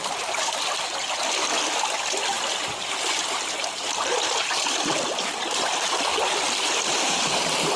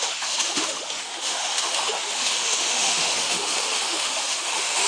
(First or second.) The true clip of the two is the first